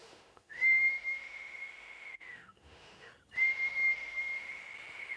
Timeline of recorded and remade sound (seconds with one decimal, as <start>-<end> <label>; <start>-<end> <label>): 0.0-3.1 remade; 3.1-3.7 recorded; 3.7-4.6 remade; 4.6-5.2 recorded